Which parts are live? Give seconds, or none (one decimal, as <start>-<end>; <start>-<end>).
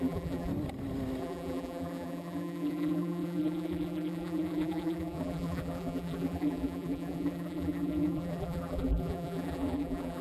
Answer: 0.5-1.2